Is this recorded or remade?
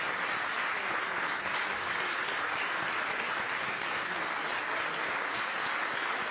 recorded